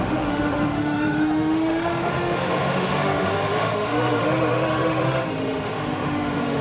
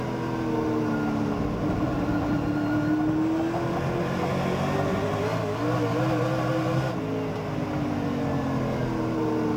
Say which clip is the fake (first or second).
first